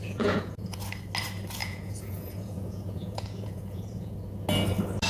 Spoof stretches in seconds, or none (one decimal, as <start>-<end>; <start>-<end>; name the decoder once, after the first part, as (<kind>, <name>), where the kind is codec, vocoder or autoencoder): 0.0-0.8 (vocoder, Vocos); 1.6-4.1